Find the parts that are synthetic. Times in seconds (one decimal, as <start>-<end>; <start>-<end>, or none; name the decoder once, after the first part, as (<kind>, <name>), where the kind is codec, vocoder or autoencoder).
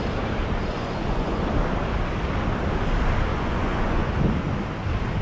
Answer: 0.7-1.4 (vocoder, Vocos); 3.3-4.1